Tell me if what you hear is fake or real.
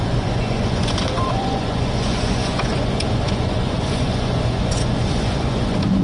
fake